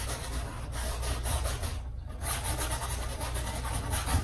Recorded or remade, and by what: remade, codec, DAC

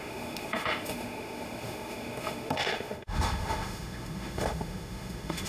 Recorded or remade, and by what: remade, autoencoder, DAC-VAE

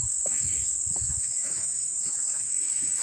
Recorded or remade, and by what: remade, autoencoder, DAC-VAE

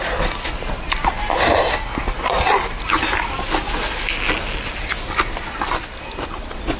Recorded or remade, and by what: recorded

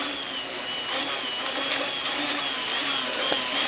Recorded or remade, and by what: recorded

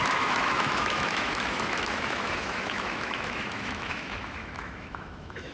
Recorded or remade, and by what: remade, autoencoder, DAC-VAE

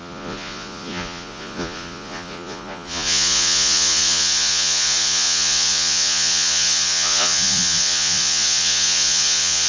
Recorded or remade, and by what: remade, vocoder, Vocos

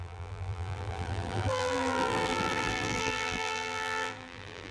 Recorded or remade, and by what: remade, vocoder, BigVGAN v2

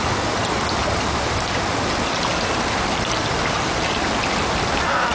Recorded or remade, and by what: recorded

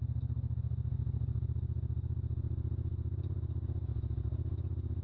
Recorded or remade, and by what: recorded